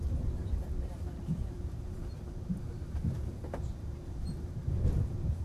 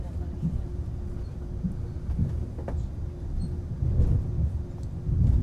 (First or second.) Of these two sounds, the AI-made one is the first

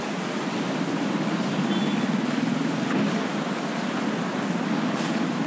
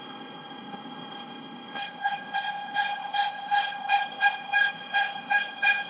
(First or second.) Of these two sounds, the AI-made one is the second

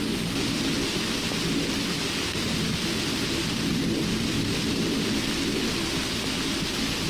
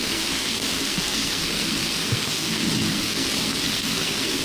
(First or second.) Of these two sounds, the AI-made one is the second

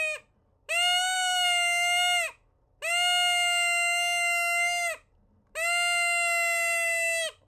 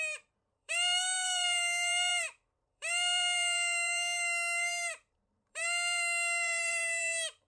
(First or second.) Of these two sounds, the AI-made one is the second